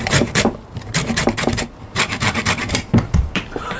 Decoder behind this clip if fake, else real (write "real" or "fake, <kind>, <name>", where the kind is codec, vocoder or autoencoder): fake, vocoder, BigVGAN v2